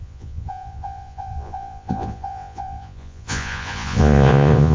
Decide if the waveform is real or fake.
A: fake